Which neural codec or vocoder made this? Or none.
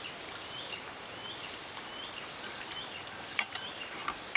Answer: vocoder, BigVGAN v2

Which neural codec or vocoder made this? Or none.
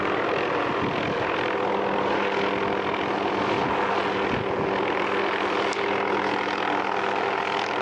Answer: none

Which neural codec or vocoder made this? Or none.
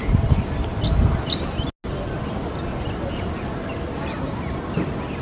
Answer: none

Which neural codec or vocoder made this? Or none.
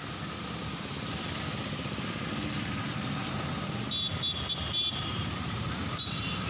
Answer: none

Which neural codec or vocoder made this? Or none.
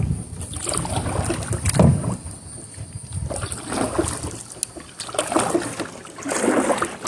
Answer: none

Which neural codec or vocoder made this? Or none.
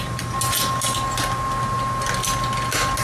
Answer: none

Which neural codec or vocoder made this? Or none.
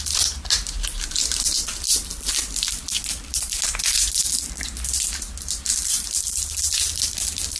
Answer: none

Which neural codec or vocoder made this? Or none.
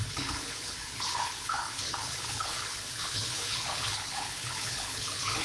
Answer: codec, HILCodec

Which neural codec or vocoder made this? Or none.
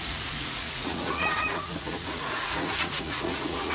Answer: vocoder, Vocos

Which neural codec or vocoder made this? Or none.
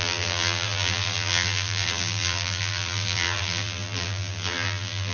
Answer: vocoder, BigVGAN v2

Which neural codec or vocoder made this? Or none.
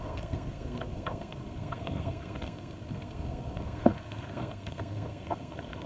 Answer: codec, SNAC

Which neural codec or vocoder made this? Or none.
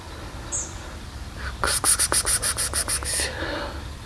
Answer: none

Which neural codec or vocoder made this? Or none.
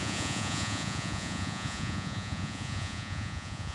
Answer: vocoder, Vocos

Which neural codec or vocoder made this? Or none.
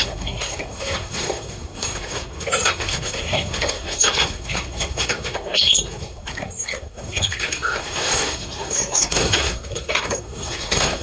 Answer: codec, SNAC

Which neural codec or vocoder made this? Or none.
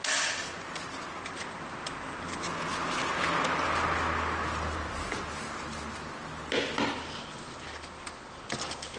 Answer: none